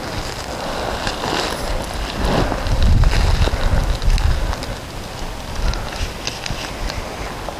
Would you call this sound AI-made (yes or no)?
no